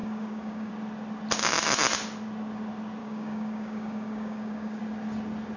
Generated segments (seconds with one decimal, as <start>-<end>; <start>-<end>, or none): 0.0-0.7; 3.0-4.8